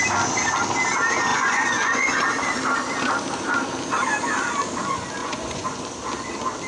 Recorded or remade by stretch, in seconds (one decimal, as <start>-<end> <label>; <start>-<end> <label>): 0.0-1.3 recorded; 1.3-2.2 remade; 2.2-5.2 recorded; 5.2-5.8 remade; 5.8-6.7 recorded